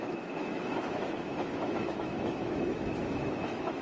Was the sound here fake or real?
fake